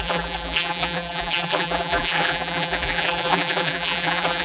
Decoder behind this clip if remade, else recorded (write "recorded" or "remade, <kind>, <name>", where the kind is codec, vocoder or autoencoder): remade, vocoder, BigVGAN v2